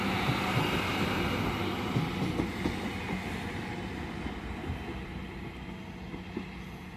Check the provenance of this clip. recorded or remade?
recorded